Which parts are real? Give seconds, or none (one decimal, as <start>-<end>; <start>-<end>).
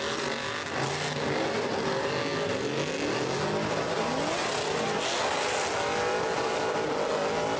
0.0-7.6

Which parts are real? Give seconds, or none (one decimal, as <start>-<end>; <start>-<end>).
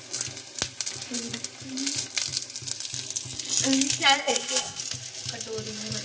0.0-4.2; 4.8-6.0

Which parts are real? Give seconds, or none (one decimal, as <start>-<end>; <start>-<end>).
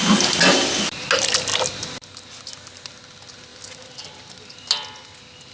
0.0-5.5